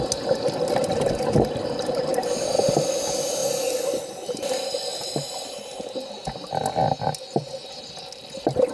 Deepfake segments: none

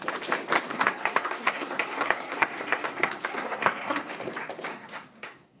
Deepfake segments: 0.7-4.1 (codec, SNAC); 4.7-5.6

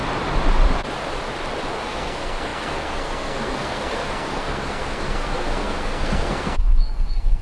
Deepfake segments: 1.7-7.4 (codec, SNAC)

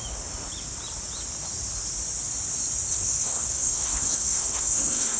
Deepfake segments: 2.9-5.2 (codec, SNAC)